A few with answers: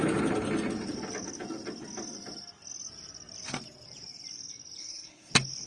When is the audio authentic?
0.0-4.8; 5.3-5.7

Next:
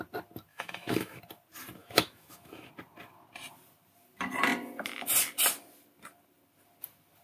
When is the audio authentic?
0.0-0.5; 1.2-1.8; 2.7-7.2

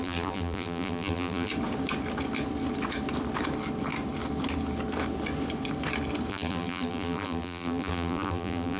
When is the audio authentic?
1.5-6.3

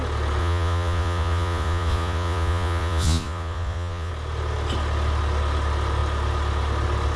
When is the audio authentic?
0.0-0.4; 4.1-7.2